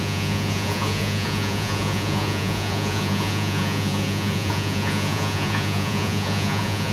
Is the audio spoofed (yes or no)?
yes